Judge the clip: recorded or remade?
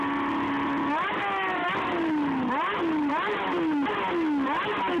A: recorded